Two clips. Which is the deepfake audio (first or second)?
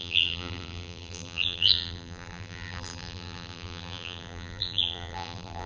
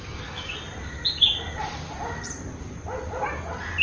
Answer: first